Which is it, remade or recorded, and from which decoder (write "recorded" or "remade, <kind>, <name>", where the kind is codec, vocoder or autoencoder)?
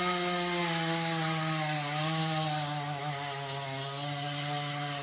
recorded